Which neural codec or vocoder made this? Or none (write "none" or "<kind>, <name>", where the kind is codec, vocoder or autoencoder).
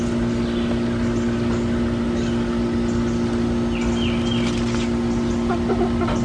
none